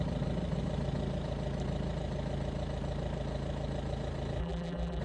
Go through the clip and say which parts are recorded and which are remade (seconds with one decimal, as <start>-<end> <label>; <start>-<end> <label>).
0.0-4.4 recorded; 4.4-5.0 remade